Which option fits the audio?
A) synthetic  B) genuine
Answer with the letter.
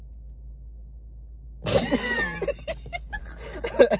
B